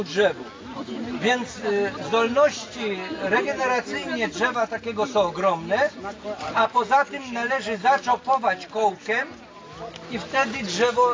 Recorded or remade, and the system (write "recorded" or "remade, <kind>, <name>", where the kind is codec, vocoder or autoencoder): recorded